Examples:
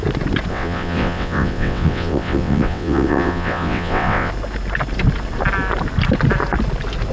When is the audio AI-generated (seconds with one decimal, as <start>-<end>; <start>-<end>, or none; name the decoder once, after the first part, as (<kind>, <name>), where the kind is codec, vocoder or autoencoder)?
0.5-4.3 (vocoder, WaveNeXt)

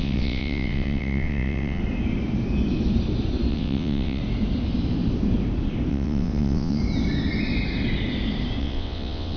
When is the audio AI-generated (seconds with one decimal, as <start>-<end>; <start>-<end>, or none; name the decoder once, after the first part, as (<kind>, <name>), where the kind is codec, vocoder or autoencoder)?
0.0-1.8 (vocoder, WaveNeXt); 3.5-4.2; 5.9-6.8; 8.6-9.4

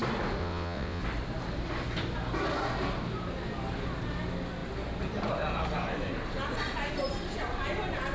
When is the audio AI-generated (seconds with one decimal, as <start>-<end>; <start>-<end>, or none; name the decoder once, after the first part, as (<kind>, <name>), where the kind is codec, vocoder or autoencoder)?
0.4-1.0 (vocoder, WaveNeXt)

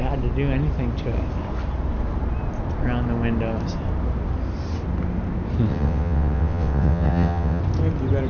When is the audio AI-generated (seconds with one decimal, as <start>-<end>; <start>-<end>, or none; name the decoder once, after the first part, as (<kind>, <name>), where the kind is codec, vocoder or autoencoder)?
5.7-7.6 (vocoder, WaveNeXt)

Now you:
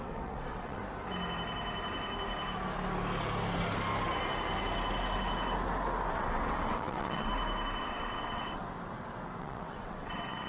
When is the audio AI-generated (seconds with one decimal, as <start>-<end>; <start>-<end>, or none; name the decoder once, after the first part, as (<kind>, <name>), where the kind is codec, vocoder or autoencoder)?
0.0-0.8 (vocoder, WaveNeXt); 6.1-7.3; 7.8-8.6; 9.4-10.5